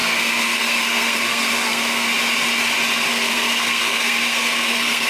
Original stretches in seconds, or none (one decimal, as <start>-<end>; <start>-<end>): 2.1-3.1